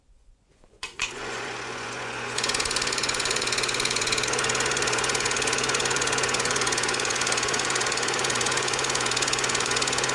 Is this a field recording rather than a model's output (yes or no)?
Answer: no